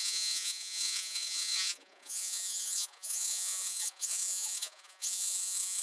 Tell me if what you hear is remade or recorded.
remade